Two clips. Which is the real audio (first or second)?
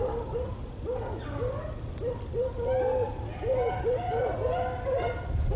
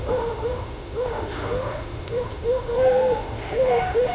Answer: first